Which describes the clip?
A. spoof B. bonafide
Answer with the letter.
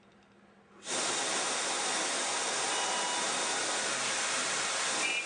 B